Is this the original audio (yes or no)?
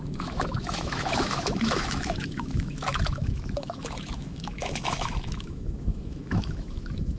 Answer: no